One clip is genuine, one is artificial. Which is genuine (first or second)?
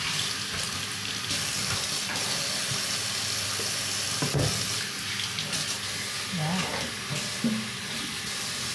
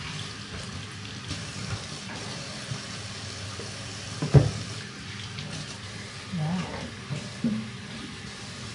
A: first